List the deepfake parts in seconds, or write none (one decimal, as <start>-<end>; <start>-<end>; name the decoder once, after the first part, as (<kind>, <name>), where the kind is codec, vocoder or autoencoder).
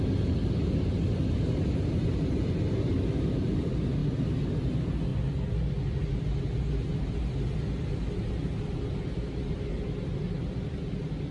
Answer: none